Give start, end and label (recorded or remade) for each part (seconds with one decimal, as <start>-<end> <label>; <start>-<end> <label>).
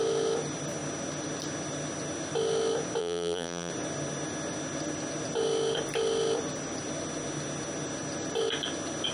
0.0-3.0 recorded; 3.0-3.7 remade; 3.7-9.1 recorded